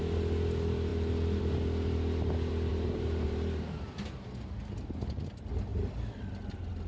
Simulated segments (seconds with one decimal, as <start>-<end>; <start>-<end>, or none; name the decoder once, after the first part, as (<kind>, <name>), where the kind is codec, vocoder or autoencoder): 2.7-3.8 (vocoder, BigVGAN v2)